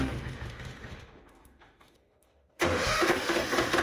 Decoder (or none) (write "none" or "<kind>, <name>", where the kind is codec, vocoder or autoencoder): autoencoder, DAC-VAE